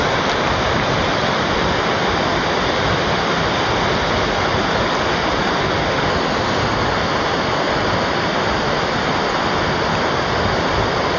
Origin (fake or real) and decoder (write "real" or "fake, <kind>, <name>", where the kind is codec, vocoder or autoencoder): real